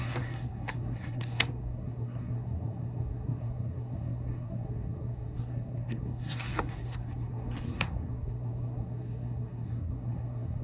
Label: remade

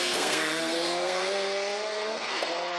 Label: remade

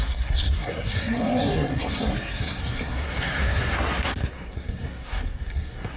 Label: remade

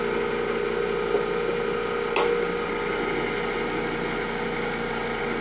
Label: recorded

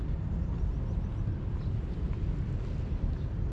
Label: recorded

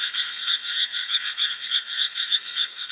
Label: remade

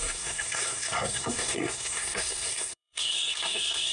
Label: remade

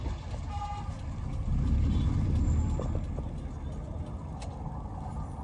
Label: recorded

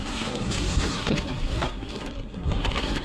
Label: remade